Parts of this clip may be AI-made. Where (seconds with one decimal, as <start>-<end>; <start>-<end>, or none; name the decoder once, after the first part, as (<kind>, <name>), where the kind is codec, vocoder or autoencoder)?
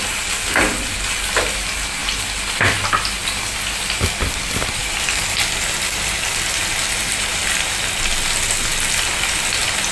none